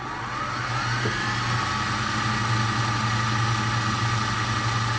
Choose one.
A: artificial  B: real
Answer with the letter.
B